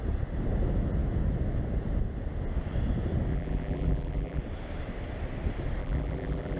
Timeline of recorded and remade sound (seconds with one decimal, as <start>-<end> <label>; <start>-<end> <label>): 0.0-3.3 recorded; 3.3-4.4 remade; 4.4-5.8 recorded; 5.8-6.6 remade